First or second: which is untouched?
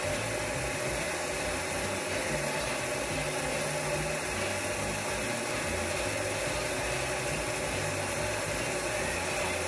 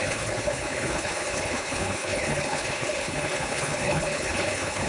first